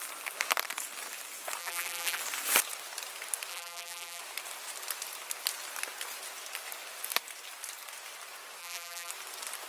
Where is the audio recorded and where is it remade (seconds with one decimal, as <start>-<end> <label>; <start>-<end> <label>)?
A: 0.0-1.6 recorded; 1.6-2.2 remade; 2.2-3.5 recorded; 3.5-4.2 remade; 4.2-8.6 recorded; 8.6-9.1 remade; 9.1-9.7 recorded